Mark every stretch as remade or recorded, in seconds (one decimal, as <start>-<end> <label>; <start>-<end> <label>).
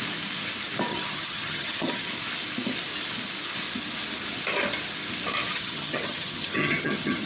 0.0-0.9 recorded; 0.9-2.1 remade; 2.1-5.5 recorded; 5.5-7.3 remade